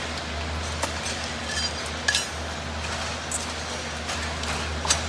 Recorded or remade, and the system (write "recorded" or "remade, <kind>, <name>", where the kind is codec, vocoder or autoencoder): recorded